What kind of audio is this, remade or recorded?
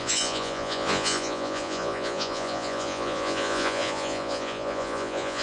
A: remade